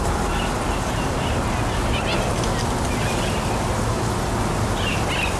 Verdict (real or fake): real